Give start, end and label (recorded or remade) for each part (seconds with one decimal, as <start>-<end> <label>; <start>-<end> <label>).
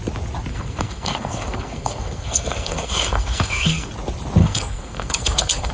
0.0-0.5 recorded; 0.5-3.9 remade; 3.9-4.4 recorded; 4.4-5.7 remade